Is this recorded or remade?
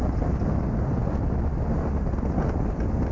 recorded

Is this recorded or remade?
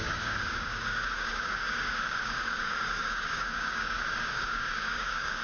remade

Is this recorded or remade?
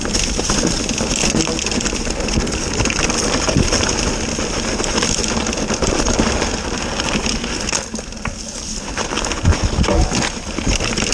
recorded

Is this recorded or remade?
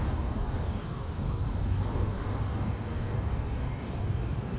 remade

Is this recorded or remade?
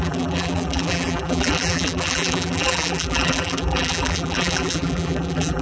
remade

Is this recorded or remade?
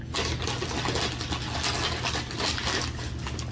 recorded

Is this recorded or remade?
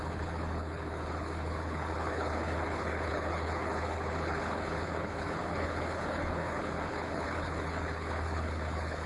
remade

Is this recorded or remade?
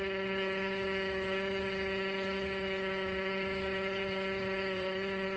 remade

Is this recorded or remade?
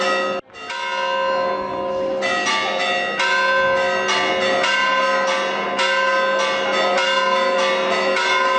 recorded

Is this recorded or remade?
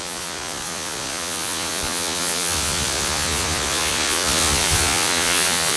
remade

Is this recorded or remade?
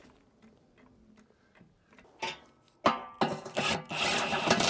recorded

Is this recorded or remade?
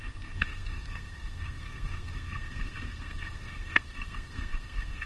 remade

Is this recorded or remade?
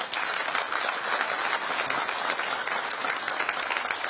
recorded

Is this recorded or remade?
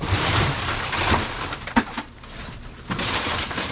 remade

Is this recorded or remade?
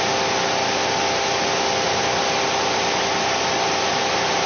recorded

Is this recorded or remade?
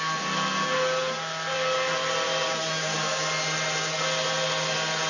recorded